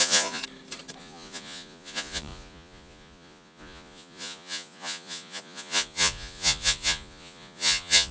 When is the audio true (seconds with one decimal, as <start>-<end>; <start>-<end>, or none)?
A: 0.4-1.0